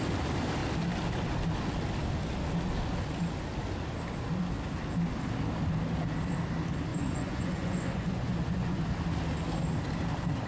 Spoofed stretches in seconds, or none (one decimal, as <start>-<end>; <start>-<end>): 6.9-8.8